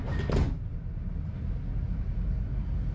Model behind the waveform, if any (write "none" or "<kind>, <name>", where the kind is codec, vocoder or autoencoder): none